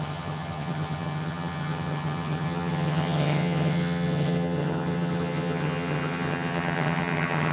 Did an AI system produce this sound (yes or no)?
yes